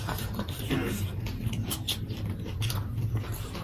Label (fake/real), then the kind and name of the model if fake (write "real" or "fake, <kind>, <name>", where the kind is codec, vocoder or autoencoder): real